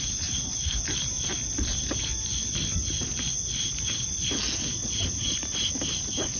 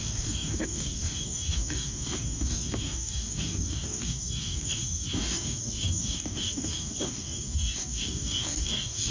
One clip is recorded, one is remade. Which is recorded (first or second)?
first